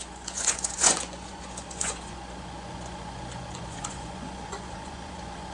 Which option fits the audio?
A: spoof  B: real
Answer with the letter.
A